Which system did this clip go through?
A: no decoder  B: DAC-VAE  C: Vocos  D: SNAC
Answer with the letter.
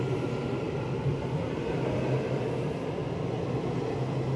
A